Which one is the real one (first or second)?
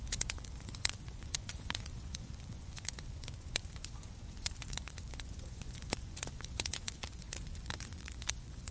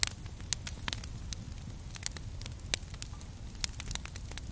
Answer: second